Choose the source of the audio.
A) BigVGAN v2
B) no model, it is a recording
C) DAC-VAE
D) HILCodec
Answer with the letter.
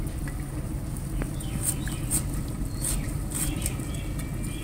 B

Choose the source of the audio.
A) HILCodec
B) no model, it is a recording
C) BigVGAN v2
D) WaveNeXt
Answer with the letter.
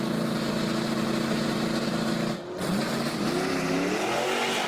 B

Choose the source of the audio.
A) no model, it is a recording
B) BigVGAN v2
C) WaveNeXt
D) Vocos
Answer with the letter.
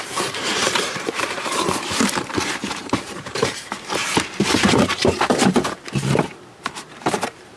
B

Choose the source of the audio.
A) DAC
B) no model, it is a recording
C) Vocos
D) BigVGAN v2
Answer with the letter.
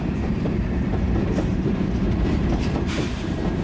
D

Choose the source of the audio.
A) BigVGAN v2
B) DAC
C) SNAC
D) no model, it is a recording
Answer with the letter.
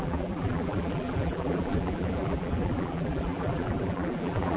A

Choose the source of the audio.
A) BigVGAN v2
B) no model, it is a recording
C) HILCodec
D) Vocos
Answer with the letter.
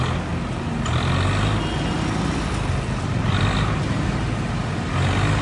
B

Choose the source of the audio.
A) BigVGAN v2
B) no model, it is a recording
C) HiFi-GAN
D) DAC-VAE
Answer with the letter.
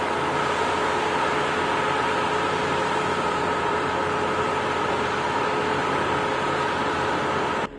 A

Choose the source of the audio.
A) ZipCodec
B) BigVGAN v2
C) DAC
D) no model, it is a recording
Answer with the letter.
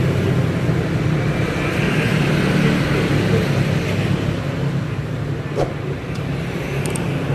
D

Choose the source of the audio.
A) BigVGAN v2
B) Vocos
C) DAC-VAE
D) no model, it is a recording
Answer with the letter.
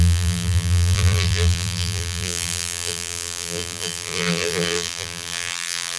A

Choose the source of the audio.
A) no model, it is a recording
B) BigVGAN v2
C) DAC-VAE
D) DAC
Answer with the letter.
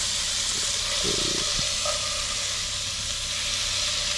A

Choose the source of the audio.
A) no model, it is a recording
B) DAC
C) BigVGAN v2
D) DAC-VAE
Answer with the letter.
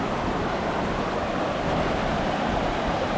A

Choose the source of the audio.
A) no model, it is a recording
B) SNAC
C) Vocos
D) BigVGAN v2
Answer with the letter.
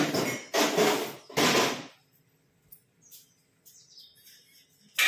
A